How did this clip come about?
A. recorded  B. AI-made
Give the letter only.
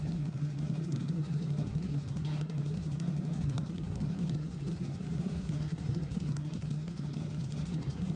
B